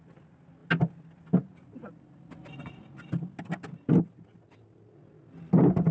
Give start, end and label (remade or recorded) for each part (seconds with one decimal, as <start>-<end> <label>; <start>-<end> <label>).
0.0-5.9 recorded